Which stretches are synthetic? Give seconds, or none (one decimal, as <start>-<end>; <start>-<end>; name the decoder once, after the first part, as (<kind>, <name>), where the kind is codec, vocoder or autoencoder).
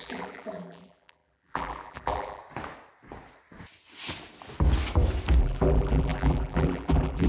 0.0-2.4 (vocoder, BigVGAN v2); 5.4-7.3